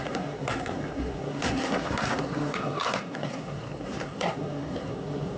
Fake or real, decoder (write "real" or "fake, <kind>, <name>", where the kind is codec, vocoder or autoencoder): fake, codec, SNAC